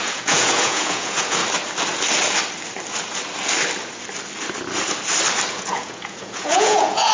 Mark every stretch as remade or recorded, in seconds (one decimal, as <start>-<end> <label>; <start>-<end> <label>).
0.0-1.4 remade; 1.4-5.5 recorded; 5.5-7.1 remade